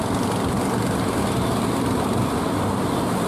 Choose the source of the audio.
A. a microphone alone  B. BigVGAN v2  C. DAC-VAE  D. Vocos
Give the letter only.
A